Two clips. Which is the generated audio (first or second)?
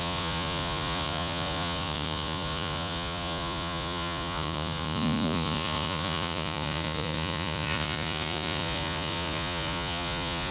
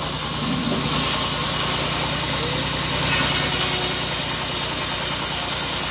first